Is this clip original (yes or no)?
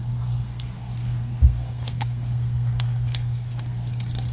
no